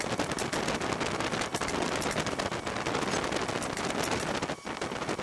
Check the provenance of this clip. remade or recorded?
recorded